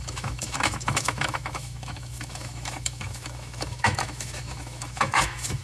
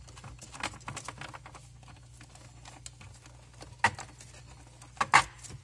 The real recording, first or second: second